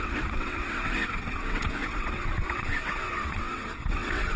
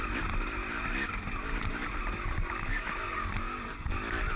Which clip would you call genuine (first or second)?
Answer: second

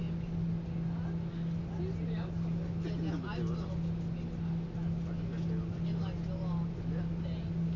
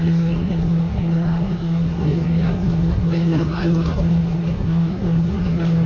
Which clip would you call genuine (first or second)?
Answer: first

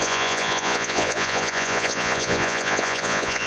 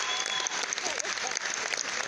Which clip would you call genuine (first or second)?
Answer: second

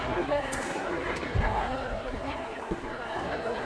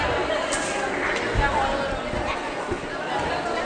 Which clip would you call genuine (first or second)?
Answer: second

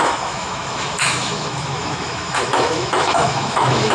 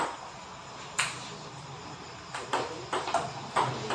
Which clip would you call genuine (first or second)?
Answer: second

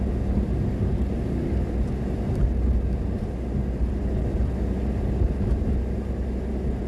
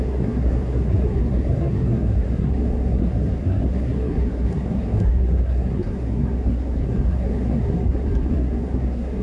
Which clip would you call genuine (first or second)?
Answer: first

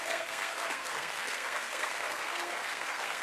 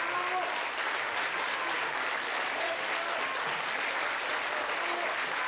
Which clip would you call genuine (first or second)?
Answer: second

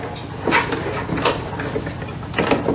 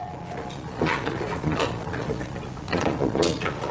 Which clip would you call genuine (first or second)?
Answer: first